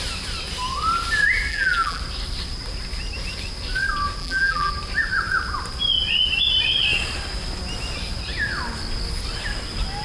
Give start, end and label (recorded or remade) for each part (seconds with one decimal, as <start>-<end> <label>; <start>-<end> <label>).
0.0-1.5 recorded; 1.5-2.0 remade; 2.0-4.2 recorded; 4.2-4.7 remade; 4.7-10.0 recorded